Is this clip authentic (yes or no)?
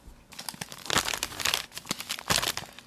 yes